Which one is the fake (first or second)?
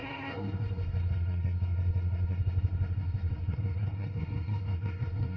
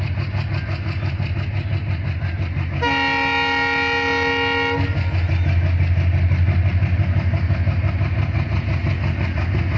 first